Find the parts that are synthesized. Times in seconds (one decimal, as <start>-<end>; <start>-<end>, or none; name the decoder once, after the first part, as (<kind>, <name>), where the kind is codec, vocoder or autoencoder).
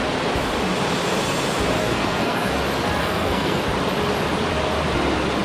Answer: 1.8-2.6 (codec, SNAC); 3.0-3.6